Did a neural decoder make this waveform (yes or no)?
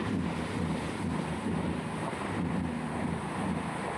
no